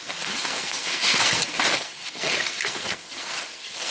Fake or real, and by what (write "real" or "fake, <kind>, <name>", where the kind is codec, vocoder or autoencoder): fake, codec, SNAC